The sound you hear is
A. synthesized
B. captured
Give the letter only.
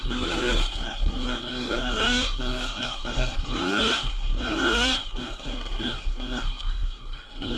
A